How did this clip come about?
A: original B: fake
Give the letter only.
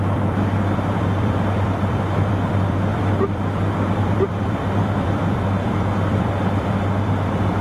B